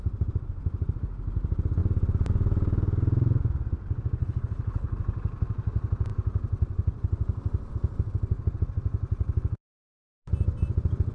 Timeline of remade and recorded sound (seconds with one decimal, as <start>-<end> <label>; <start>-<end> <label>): 0.0-4.2 recorded; 4.2-5.0 remade; 5.0-11.1 recorded